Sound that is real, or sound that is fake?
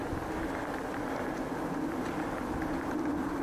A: real